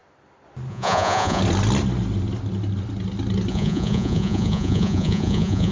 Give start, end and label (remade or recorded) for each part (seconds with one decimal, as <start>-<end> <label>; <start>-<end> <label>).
0.0-0.7 recorded; 0.7-1.4 remade; 1.4-3.5 recorded; 3.5-5.7 remade